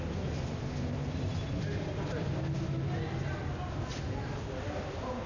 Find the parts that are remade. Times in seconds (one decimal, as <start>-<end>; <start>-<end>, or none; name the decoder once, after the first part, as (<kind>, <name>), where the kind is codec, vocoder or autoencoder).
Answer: none